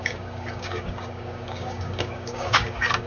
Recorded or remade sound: remade